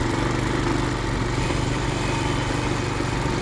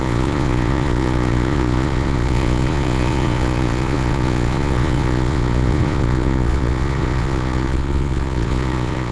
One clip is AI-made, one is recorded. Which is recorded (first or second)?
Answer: first